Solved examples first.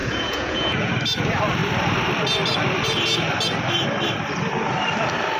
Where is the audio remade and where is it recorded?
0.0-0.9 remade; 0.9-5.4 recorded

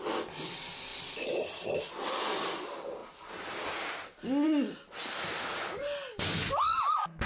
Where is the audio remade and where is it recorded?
0.0-7.3 remade

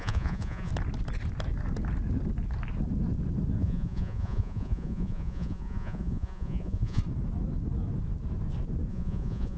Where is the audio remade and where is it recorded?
0.0-0.7 remade; 0.7-3.6 recorded; 3.6-7.0 remade; 7.0-8.9 recorded; 8.9-9.6 remade

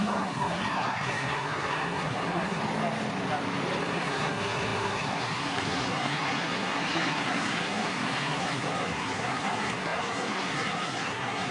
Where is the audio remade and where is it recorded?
0.0-2.6 remade; 2.6-3.8 recorded; 3.8-11.5 remade

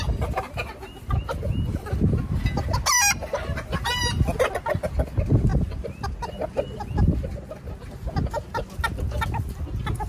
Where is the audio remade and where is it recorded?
0.0-10.1 recorded

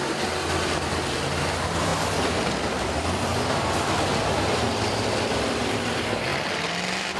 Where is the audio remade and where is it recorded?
0.0-7.2 recorded

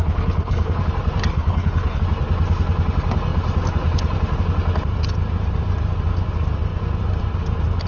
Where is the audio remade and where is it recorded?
0.0-0.8 remade; 0.8-1.3 recorded; 1.3-2.0 remade; 2.0-7.9 recorded

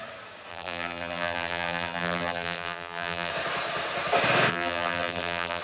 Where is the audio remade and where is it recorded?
0.0-0.5 recorded; 0.5-3.3 remade; 3.3-4.5 recorded; 4.5-5.6 remade